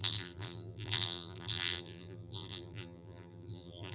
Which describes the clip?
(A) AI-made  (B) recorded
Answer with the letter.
A